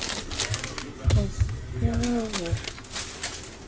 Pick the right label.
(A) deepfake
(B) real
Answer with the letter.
B